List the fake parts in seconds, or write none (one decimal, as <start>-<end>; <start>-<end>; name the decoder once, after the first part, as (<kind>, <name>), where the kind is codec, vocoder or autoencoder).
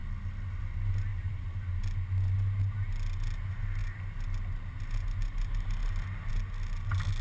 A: 1.1-1.8 (vocoder, BigVGAN v2)